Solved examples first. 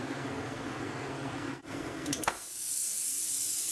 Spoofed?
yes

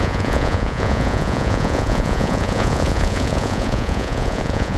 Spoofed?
yes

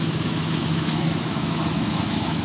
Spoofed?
yes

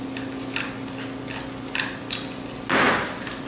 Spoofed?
no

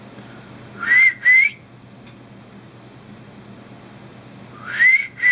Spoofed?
no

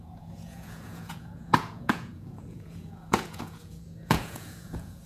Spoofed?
yes